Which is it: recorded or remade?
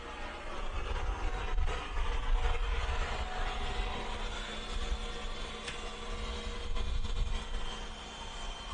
recorded